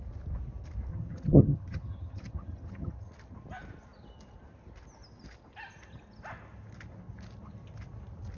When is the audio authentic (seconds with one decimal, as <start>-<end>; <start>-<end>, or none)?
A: 0.0-0.9; 3.1-8.4